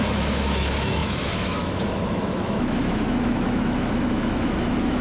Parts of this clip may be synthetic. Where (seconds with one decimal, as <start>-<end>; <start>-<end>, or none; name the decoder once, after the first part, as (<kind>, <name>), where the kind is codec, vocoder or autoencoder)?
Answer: 0.0-5.0 (autoencoder, DAC-VAE)